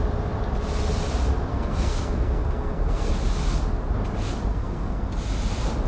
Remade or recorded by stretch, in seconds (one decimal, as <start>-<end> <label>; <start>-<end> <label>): 0.0-1.5 recorded; 1.5-3.1 remade; 3.1-4.5 recorded; 4.5-5.1 remade; 5.1-5.9 recorded